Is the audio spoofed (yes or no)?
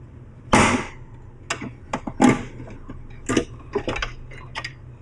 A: no